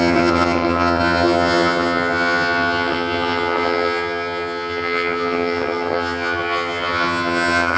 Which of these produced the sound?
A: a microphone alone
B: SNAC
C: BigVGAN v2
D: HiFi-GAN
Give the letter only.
D